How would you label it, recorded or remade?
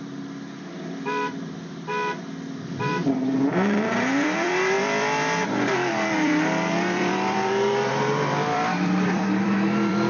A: remade